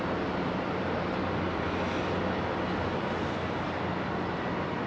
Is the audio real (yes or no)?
yes